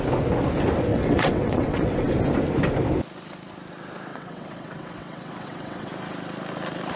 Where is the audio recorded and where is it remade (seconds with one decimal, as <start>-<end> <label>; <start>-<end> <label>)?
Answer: 0.0-0.9 recorded; 0.9-2.1 remade; 2.1-4.1 recorded; 4.1-5.9 remade; 5.9-7.0 recorded